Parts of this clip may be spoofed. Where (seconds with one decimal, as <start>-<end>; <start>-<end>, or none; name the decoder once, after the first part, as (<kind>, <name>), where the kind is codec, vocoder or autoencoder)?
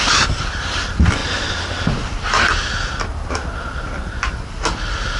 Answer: none